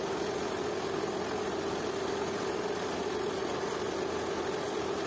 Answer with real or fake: real